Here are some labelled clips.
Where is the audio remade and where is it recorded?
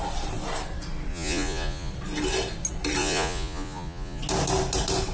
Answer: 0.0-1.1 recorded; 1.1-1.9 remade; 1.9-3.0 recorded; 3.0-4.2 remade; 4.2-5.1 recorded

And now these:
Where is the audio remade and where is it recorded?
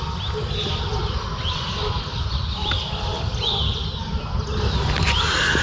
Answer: 0.0-5.6 recorded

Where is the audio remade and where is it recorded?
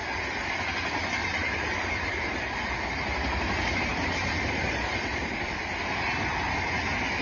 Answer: 0.0-1.2 recorded; 1.2-2.7 remade; 2.7-3.9 recorded; 3.9-5.6 remade; 5.6-7.2 recorded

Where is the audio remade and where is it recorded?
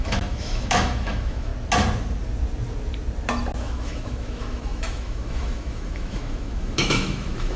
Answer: 0.0-1.5 remade; 1.5-3.6 recorded; 3.6-7.6 remade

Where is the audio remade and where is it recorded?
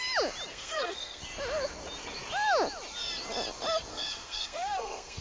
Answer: 0.0-0.5 recorded; 0.5-1.2 remade; 1.2-3.9 recorded; 3.9-5.2 remade